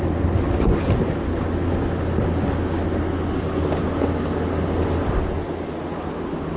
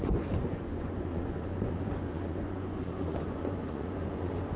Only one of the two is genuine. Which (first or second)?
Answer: first